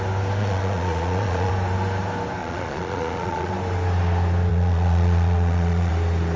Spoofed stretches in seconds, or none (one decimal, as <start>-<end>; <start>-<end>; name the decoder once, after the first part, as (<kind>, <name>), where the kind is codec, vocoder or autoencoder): 0.4-1.5 (vocoder, Vocos); 2.4-3.5; 4.5-5.9